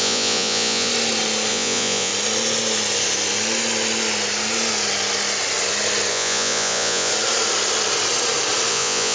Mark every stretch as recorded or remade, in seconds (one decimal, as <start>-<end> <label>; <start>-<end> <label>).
0.0-0.9 remade; 0.9-1.5 recorded; 1.5-2.1 remade; 2.1-6.1 recorded; 6.1-7.1 remade; 7.1-8.7 recorded; 8.7-9.1 remade